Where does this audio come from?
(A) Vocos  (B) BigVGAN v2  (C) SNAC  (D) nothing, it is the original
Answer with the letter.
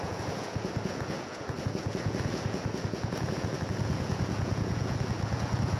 A